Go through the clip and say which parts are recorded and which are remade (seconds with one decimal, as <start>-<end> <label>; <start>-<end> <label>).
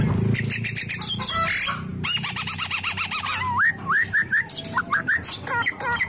0.0-6.1 recorded